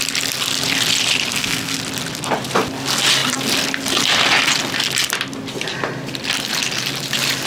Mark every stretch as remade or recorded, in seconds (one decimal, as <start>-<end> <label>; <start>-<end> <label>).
0.0-1.3 recorded; 1.3-1.8 remade; 1.8-7.5 recorded